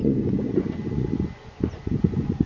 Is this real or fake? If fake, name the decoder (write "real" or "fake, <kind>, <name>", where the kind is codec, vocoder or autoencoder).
fake, vocoder, Vocos